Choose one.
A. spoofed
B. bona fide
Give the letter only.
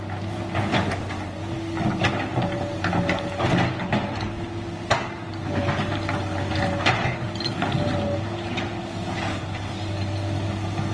B